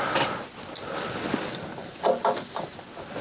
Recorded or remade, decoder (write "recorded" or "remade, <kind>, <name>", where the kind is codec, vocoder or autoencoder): recorded